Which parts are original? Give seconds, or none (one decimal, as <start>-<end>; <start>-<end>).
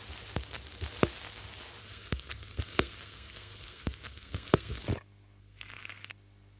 0.0-1.8; 4.8-5.4; 6.1-6.6